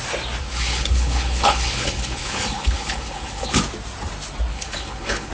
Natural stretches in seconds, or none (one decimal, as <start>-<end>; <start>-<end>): 0.0-0.4; 3.6-4.5

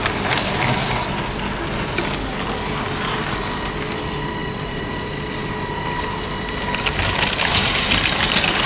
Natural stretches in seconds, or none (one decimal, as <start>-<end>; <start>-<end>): 0.0-8.7